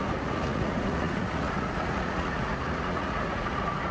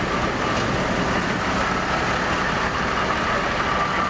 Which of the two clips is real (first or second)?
second